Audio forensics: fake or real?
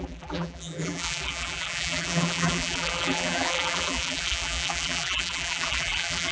fake